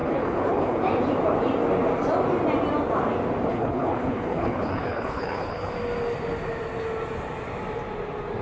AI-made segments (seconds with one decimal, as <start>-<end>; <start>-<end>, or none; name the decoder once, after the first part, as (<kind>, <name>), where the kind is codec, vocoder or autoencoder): 0.0-0.8 (codec, HILCodec); 3.5-5.7